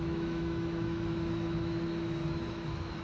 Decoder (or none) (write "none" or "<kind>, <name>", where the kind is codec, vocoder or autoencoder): autoencoder, DAC-VAE